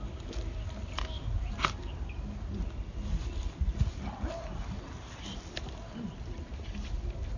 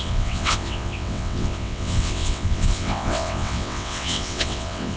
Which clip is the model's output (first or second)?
second